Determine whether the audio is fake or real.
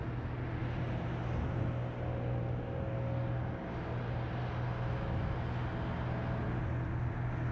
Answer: real